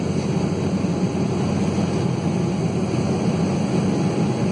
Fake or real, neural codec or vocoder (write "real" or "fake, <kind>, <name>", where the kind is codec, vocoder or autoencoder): real